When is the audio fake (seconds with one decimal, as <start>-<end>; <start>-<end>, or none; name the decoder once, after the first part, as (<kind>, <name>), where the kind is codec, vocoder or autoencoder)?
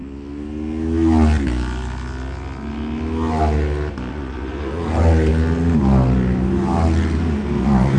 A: 4.1-5.3 (vocoder, Vocos); 7.6-8.0